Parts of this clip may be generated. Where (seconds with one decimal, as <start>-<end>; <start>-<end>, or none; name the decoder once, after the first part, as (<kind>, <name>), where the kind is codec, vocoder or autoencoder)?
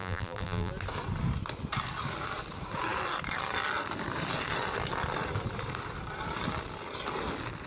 0.0-0.7 (vocoder, BigVGAN v2)